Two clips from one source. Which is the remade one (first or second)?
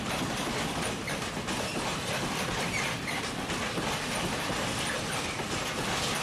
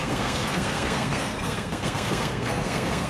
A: second